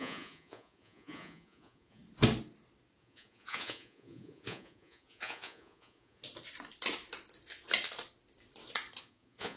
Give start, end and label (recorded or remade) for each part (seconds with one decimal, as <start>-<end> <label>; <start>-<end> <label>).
0.0-2.0 remade; 2.0-3.0 recorded; 3.0-6.2 remade; 6.2-9.0 recorded; 9.0-9.6 remade